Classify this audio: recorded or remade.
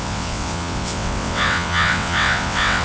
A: remade